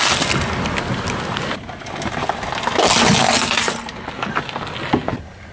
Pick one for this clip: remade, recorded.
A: recorded